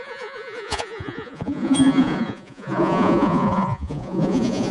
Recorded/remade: remade